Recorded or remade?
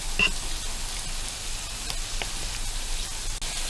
recorded